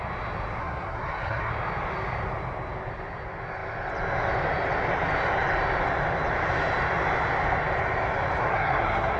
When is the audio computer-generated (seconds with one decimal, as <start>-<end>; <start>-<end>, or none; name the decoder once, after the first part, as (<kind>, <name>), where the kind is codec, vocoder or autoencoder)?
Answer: 0.6-1.5 (codec, SNAC); 8.4-9.2